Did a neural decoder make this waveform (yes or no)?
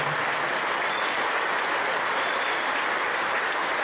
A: no